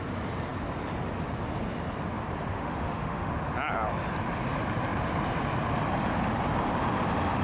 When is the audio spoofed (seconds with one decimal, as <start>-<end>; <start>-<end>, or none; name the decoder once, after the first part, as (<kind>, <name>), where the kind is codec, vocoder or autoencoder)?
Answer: 2.5-3.3 (autoencoder, DAC-VAE)